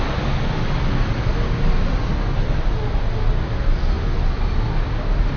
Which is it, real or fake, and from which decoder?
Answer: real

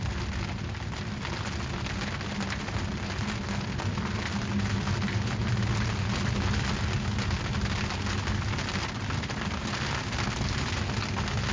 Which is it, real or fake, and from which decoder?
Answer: real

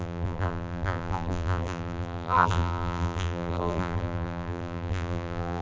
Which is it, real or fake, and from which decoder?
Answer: fake, vocoder, BigVGAN v2